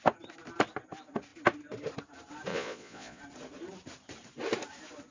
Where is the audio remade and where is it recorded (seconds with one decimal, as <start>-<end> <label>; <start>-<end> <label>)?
0.0-2.5 recorded; 2.5-3.2 remade; 3.2-5.1 recorded